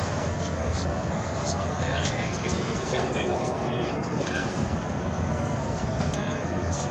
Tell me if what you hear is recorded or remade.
remade